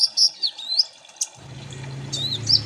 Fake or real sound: real